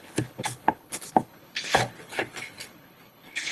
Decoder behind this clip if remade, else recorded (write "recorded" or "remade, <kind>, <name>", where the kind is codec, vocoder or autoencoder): remade, codec, HILCodec